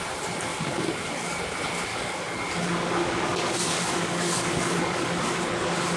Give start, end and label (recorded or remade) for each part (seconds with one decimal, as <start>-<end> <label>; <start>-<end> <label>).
0.0-0.5 recorded; 0.5-1.4 remade; 1.4-1.9 recorded; 1.9-5.5 remade; 5.5-6.0 recorded